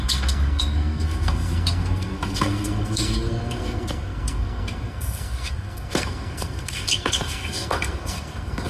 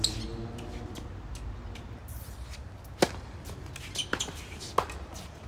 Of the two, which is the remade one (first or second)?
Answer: first